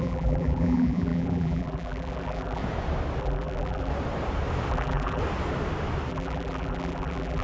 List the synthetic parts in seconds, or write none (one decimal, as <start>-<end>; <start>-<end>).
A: 0.0-2.6; 3.2-3.9; 4.7-5.2; 6.1-7.4